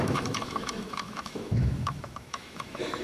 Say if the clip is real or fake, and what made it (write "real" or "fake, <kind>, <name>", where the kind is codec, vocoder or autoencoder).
fake, autoencoder, DAC-VAE